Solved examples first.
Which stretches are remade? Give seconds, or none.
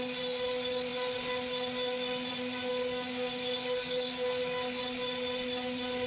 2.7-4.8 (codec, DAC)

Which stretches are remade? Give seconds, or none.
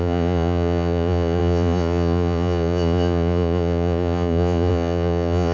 0.0-5.5 (vocoder, Vocos)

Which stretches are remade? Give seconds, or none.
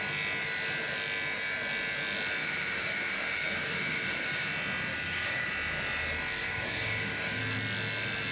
2.4-4.5 (codec, DAC); 4.9-5.5; 6.4-7.4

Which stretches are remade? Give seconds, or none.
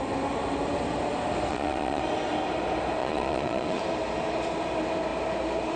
1.5-2.0 (vocoder, Vocos); 3.0-3.8